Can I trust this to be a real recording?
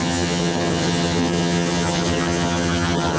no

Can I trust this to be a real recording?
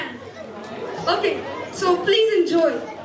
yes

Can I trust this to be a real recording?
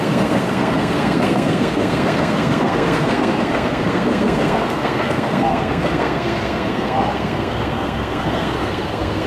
no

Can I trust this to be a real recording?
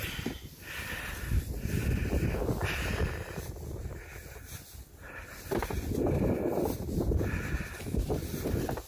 yes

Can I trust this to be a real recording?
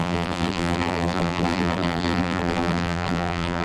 no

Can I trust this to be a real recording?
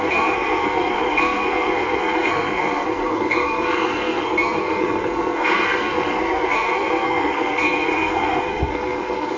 no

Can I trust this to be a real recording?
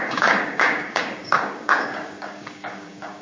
no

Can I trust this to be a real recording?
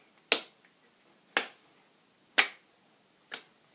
yes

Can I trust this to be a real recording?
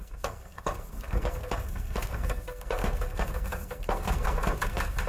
no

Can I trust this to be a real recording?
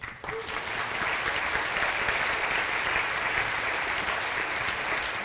yes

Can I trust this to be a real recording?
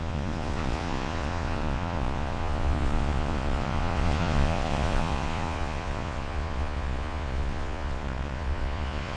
no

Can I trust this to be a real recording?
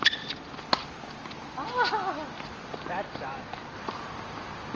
yes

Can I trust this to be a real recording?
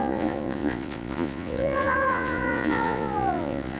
no